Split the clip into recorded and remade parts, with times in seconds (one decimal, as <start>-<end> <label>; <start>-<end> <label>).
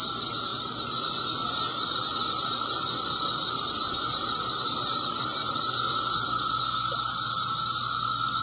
0.0-8.4 recorded